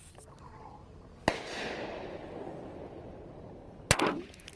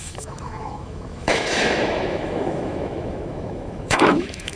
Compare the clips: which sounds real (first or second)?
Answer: first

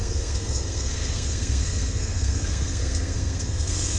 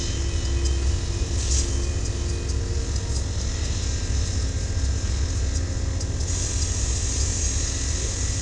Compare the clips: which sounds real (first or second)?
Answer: second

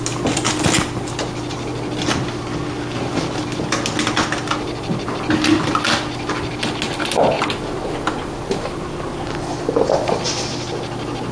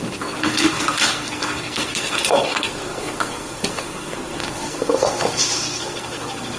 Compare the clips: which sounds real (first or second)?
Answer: first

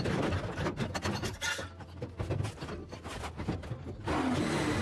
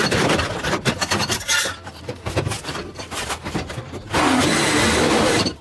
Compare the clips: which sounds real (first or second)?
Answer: first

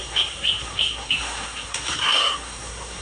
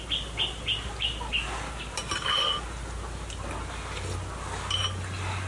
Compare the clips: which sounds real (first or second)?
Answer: second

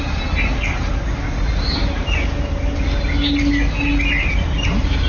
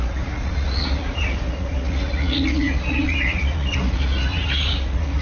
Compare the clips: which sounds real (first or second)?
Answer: first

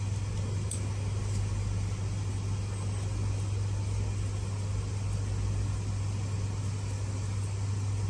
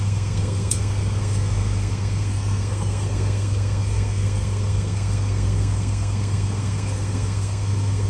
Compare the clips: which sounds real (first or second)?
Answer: first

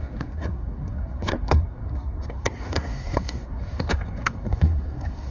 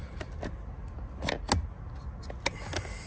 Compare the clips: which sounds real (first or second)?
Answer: second